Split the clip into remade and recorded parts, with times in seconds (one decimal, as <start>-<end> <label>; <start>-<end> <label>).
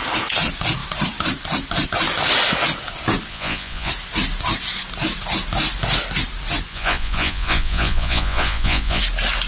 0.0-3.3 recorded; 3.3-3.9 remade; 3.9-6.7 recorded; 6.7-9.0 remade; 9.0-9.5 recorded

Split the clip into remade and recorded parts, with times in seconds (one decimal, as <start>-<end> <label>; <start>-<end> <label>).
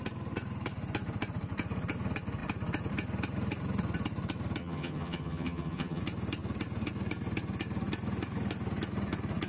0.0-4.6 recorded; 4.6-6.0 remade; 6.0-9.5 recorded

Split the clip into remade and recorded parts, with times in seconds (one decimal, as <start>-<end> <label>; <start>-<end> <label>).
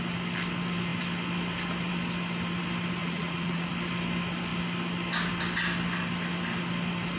0.0-3.0 recorded; 3.0-3.7 remade; 3.7-7.2 recorded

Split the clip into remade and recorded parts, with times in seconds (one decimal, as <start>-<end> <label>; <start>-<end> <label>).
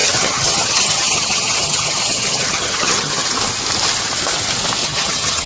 0.0-3.3 remade; 3.3-4.8 recorded; 4.8-5.5 remade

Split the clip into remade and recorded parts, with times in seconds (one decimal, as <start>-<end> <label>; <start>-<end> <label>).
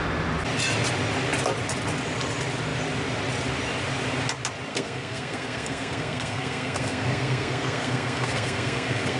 0.0-4.7 recorded; 4.7-9.2 remade